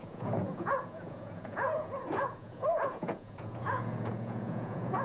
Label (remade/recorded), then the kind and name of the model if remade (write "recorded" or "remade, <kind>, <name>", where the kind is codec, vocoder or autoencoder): remade, vocoder, Vocos